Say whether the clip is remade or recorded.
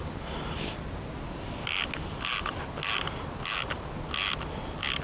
recorded